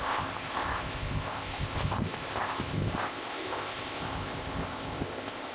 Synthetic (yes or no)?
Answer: yes